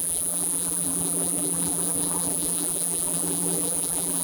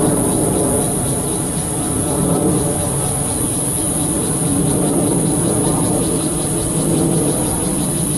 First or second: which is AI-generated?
first